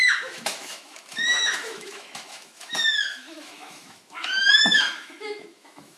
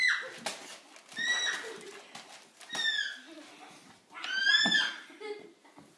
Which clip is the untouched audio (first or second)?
second